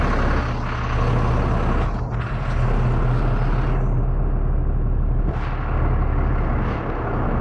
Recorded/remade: recorded